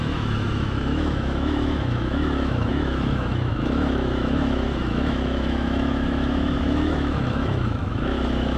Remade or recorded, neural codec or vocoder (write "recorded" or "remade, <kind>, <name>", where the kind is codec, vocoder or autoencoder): remade, autoencoder, DAC-VAE